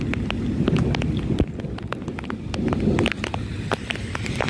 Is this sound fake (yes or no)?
no